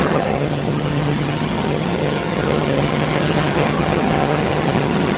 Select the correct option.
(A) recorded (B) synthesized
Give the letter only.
B